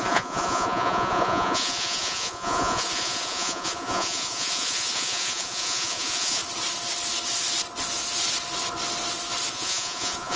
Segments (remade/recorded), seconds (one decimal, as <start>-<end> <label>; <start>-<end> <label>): 0.0-6.4 remade; 6.4-9.5 recorded; 9.5-10.4 remade